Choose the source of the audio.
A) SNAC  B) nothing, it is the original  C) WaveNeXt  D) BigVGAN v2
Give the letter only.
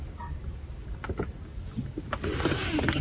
B